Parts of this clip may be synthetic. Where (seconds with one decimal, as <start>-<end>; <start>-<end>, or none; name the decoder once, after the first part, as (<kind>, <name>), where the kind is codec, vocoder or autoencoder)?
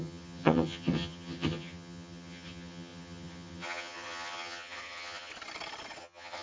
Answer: 0.0-5.3 (vocoder, HiFi-GAN); 6.0-6.4